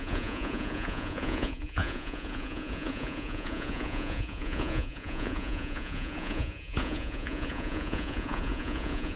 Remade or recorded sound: remade